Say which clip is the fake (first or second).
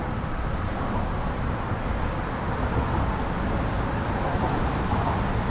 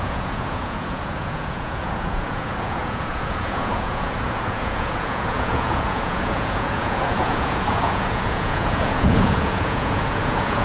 second